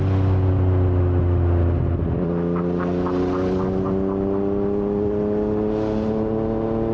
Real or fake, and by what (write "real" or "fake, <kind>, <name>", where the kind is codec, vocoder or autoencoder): real